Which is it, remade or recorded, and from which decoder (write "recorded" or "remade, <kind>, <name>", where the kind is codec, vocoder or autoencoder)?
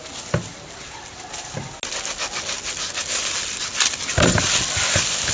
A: recorded